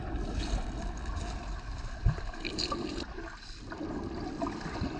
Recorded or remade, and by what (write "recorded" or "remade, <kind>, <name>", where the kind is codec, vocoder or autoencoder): recorded